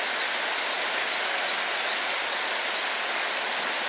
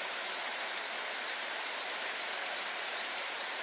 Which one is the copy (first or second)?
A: second